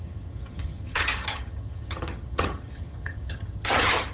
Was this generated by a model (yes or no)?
yes